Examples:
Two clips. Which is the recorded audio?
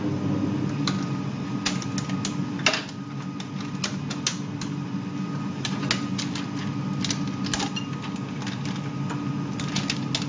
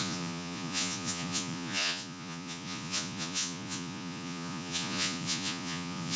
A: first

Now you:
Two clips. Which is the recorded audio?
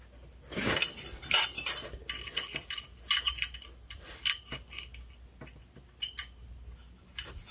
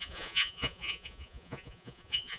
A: first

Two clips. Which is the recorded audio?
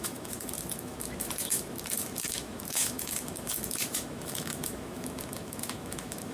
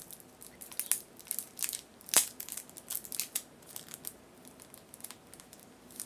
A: second